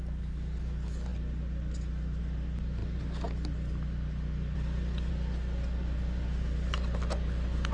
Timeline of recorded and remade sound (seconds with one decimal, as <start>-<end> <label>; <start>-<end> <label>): 0.0-7.7 recorded